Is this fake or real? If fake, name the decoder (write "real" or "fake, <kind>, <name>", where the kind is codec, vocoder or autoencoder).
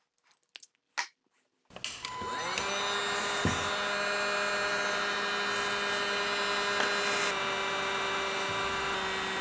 real